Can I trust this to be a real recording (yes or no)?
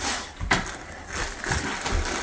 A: yes